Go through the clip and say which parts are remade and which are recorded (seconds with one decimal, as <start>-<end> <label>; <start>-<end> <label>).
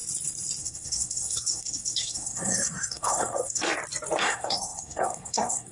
0.0-0.6 recorded; 0.6-3.6 remade; 3.6-4.2 recorded; 4.2-5.7 remade